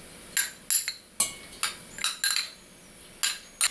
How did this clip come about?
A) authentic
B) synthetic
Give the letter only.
A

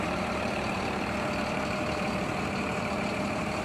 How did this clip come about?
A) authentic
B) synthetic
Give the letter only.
B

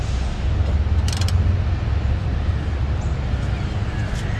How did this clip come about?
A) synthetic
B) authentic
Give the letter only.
B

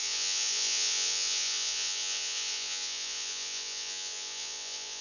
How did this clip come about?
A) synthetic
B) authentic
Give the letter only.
A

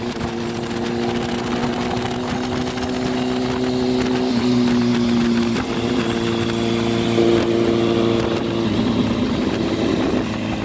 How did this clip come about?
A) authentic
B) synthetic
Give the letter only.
A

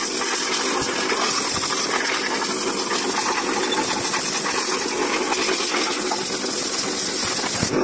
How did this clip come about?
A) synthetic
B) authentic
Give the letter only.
B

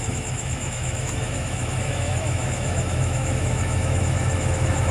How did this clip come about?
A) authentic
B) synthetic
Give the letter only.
B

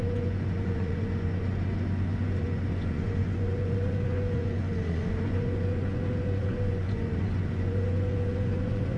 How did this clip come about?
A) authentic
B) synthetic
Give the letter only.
B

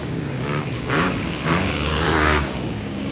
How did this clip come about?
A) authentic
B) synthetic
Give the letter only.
B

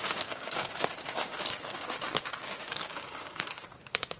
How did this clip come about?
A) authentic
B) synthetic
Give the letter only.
B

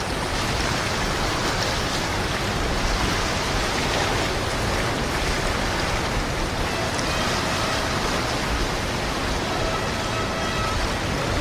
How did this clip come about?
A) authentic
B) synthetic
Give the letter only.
A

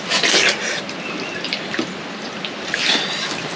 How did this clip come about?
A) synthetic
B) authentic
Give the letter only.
B